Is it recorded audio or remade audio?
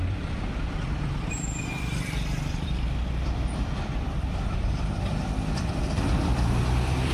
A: remade